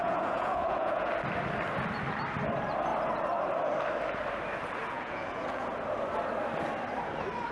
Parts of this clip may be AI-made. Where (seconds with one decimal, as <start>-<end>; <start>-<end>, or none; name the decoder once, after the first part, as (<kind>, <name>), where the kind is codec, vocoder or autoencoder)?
0.0-1.1 (vocoder, Vocos); 4.8-5.7